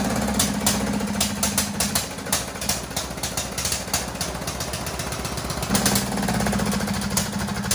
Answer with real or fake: real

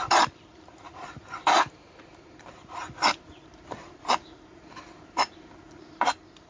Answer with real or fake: fake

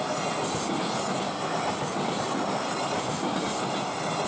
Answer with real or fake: real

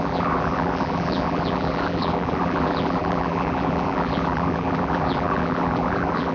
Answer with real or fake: fake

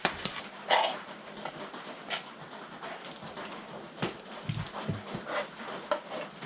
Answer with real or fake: fake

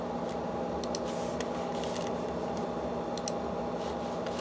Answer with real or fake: real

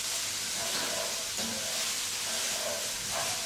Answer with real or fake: real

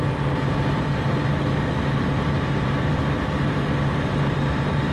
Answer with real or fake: fake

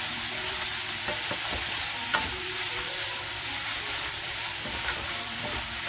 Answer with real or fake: fake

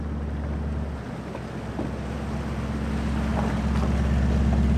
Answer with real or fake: real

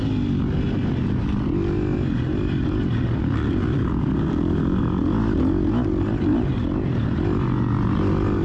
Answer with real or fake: real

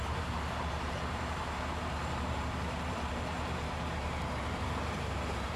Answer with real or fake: fake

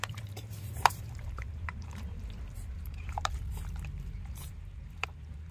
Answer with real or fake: fake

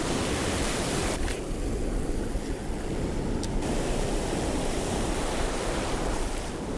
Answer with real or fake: fake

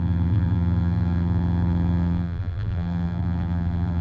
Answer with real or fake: fake